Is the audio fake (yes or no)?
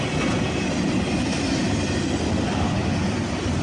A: no